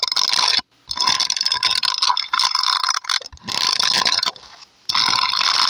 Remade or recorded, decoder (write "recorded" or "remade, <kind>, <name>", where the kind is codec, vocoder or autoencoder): recorded